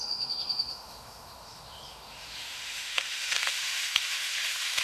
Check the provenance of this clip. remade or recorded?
remade